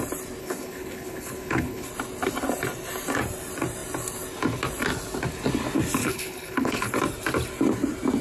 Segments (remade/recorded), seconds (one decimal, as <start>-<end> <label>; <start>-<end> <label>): 0.0-0.4 recorded; 0.4-1.9 remade; 1.9-6.0 recorded; 6.0-6.9 remade; 6.9-8.2 recorded